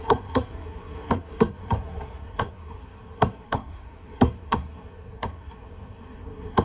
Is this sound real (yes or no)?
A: no